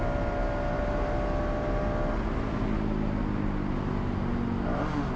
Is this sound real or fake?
real